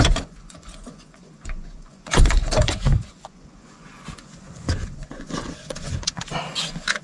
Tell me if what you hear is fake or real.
fake